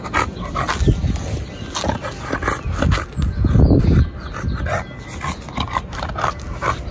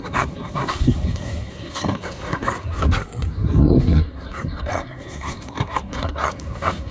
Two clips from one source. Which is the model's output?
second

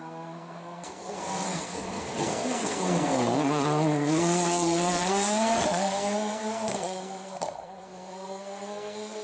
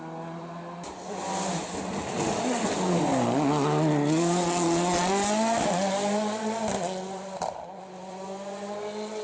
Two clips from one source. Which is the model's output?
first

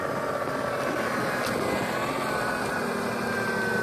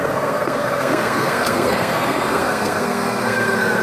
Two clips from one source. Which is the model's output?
second